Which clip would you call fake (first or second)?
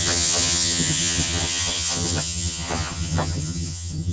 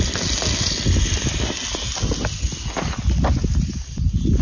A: first